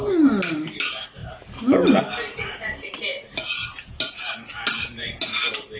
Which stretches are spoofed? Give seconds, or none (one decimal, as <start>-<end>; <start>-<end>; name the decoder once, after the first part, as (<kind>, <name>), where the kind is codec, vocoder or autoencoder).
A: none

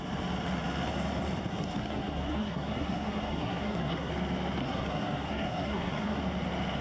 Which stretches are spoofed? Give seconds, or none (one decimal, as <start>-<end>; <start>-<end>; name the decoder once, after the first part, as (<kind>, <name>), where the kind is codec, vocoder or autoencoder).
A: 1.5-4.1 (codec, SNAC); 4.6-6.2